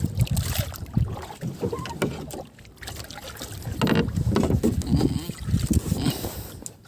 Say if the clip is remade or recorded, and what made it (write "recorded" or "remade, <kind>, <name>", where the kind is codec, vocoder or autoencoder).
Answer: recorded